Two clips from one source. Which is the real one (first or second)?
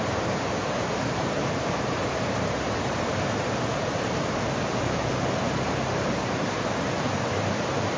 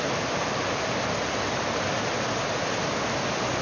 second